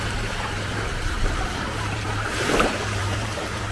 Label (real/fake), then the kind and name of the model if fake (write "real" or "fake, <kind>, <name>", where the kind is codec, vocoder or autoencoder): fake, vocoder, BigVGAN v2